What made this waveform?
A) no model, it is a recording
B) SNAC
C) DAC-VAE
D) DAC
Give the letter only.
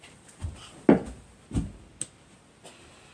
A